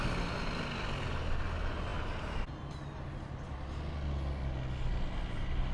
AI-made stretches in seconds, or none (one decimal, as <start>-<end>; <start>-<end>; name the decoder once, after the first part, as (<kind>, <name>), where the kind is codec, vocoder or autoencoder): none